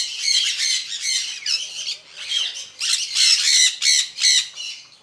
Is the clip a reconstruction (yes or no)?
no